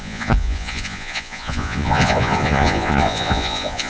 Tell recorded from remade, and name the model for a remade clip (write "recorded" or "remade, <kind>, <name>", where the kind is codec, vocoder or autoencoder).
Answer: remade, vocoder, Vocos